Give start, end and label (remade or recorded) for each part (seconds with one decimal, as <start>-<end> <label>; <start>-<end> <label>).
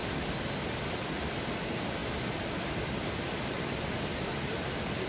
0.0-5.1 recorded